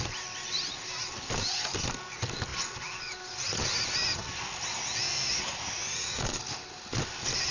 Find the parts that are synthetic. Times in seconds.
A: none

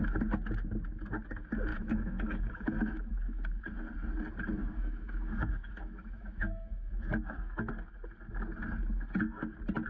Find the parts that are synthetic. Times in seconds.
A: 1.7-3.6 (autoencoder, DAC-VAE); 4.6-7.7

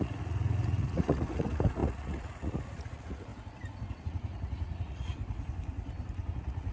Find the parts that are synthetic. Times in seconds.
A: 0.0-3.3 (vocoder, Vocos); 4.0-5.2; 6.3-6.7

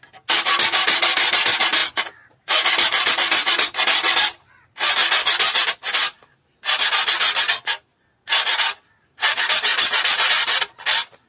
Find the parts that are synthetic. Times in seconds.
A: none

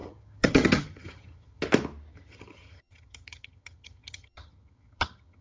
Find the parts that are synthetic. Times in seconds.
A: 0.0-1.6 (vocoder, HiFi-GAN); 2.1-5.4

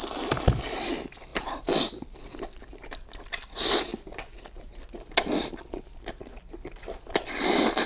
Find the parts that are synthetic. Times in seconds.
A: 0.0-3.9 (vocoder, BigVGAN v2); 5.8-7.9

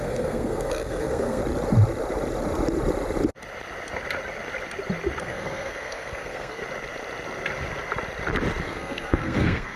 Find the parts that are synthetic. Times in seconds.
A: 0.0-1.4 (codec, SNAC); 5.2-6.6; 8.6-9.8

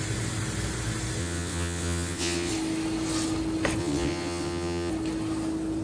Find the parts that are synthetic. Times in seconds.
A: 1.2-2.5 (vocoder, WaveNeXt); 3.8-4.9